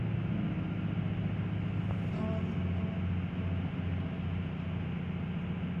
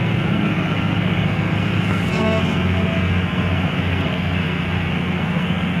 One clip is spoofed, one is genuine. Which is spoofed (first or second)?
second